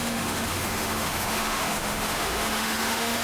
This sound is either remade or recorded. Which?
remade